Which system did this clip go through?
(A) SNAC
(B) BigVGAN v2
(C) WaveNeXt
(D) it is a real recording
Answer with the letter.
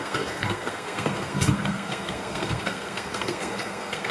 A